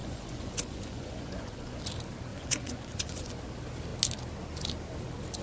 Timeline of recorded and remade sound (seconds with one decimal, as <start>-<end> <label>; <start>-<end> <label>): 0.0-1.8 remade; 1.8-2.3 recorded; 2.3-3.3 remade; 3.3-5.4 recorded